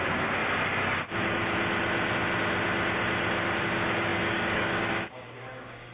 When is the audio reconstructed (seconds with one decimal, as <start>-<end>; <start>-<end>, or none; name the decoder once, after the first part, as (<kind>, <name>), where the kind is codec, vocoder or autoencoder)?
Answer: 0.0-0.4 (codec, DAC); 3.6-5.9